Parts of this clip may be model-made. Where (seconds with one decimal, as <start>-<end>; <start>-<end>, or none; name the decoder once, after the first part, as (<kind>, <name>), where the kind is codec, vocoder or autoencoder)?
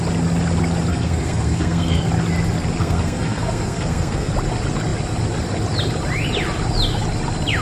0.9-2.1 (codec, SNAC); 2.8-4.3